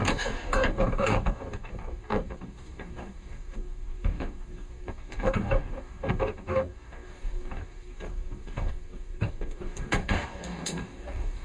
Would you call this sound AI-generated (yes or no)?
yes